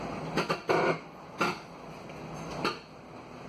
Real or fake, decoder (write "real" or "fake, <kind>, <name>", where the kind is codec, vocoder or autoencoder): real